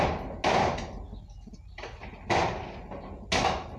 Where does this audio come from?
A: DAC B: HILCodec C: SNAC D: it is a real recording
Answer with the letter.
D